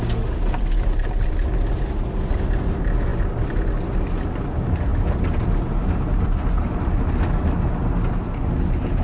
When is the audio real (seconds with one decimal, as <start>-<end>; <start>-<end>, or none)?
0.0-9.0